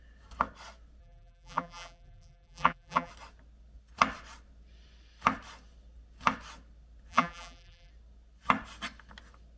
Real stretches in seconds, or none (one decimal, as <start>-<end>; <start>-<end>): 0.0-1.0; 3.1-7.1; 7.9-9.6